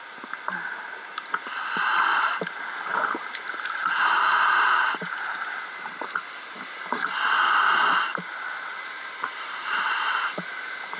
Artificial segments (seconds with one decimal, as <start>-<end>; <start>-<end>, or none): 2.9-5.6; 8.1-9.9